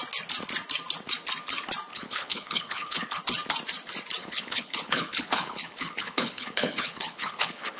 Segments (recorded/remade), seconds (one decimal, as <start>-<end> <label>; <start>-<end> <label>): 0.0-1.9 recorded; 1.9-3.2 remade; 3.2-4.2 recorded; 4.2-7.8 remade